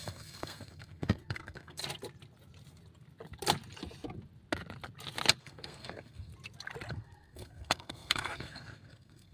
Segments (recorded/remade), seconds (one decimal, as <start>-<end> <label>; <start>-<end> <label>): 0.0-1.8 remade; 1.8-5.4 recorded; 5.4-6.3 remade; 6.3-6.9 recorded; 6.9-9.3 remade